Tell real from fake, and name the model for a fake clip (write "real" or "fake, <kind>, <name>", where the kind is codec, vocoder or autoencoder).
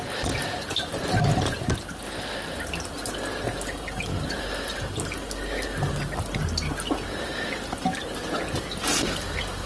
real